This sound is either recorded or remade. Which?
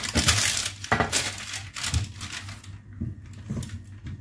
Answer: recorded